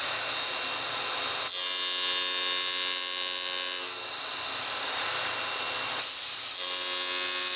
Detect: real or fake real